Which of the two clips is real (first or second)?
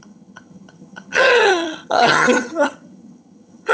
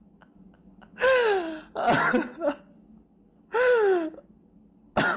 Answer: second